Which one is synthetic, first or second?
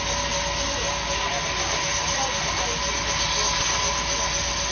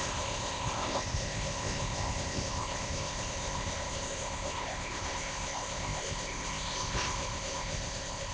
second